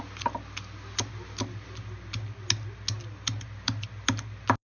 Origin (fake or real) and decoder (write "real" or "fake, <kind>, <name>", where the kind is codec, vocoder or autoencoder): real